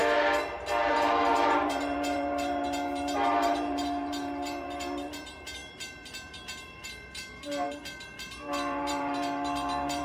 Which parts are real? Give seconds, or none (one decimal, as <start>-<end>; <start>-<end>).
0.0-0.9